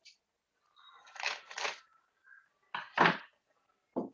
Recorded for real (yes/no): yes